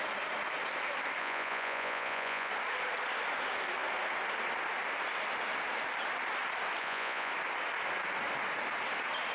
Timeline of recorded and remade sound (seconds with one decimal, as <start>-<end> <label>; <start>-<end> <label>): 0.0-1.2 recorded; 1.2-2.5 remade; 2.5-6.8 recorded; 6.8-7.3 remade; 7.3-9.3 recorded